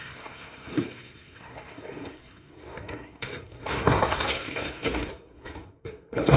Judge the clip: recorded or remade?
remade